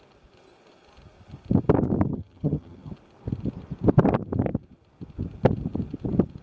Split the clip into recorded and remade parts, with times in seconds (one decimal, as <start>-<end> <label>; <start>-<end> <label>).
0.0-2.1 recorded; 2.1-2.9 remade; 2.9-6.4 recorded